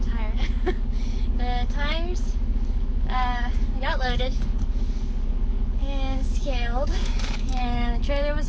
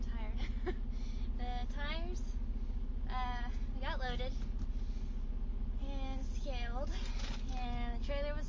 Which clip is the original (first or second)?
second